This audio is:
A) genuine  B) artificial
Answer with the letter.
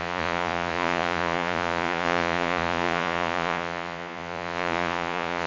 B